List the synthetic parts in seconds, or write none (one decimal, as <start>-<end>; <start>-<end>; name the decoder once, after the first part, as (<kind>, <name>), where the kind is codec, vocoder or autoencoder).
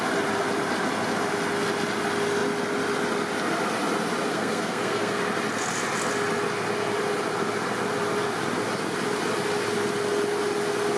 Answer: 4.3-5.2 (codec, SNAC)